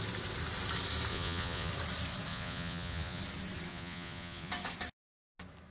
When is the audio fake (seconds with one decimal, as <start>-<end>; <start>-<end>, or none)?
1.1-1.7; 2.3-3.2; 3.7-4.5